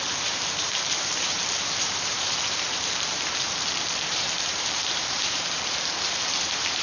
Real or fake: fake